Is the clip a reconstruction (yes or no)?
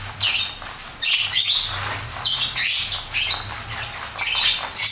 no